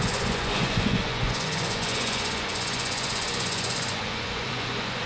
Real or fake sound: fake